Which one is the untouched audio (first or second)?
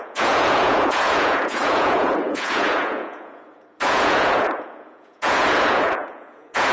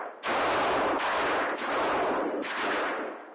second